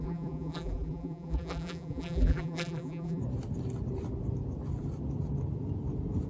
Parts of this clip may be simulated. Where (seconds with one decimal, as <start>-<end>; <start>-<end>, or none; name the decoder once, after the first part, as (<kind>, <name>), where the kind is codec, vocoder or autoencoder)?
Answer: 0.0-3.2 (vocoder, BigVGAN v2)

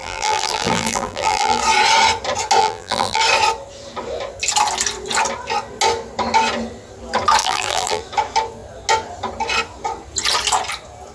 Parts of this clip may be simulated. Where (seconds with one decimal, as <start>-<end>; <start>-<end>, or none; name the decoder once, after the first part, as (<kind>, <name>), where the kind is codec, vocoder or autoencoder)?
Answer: 0.0-1.6 (vocoder, BigVGAN v2); 2.6-3.2; 7.4-8.0

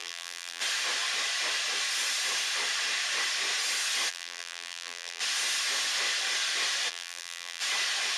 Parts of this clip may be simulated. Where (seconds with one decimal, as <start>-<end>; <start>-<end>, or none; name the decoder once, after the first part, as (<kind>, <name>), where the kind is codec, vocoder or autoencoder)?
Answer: 0.0-0.6 (vocoder, BigVGAN v2); 4.1-5.2; 6.9-7.6